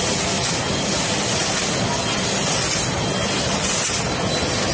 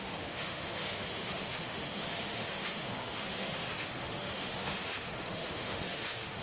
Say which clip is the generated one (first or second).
second